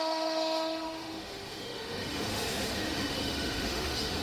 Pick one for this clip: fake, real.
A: fake